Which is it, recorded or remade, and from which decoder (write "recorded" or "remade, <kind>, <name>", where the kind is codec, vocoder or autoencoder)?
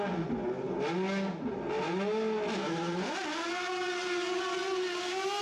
recorded